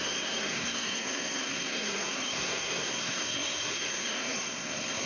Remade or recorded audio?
remade